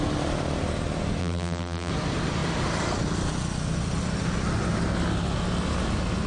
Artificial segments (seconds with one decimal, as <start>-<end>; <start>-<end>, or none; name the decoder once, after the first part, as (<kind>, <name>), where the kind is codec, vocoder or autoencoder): 1.2-1.9 (vocoder, BigVGAN v2)